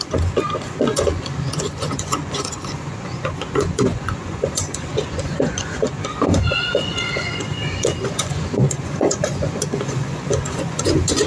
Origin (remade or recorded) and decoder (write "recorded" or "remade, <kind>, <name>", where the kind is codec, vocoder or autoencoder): remade, vocoder, Vocos